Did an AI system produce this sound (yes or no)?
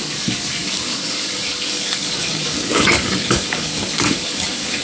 yes